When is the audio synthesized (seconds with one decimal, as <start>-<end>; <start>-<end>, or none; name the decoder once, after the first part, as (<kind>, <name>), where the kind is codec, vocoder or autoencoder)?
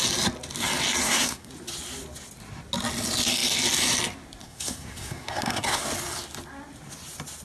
1.0-1.5 (codec, SNAC); 4.4-5.8